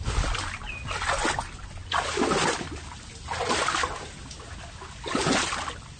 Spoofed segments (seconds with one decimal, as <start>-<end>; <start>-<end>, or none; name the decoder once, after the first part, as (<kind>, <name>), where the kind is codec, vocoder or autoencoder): none